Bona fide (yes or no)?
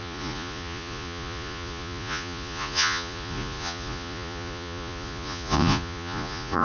no